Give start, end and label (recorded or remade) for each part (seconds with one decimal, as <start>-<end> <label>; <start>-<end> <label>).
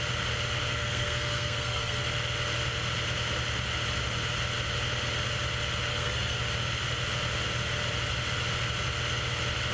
0.0-0.7 recorded; 0.7-2.0 remade; 2.0-5.9 recorded; 5.9-6.4 remade; 6.4-9.7 recorded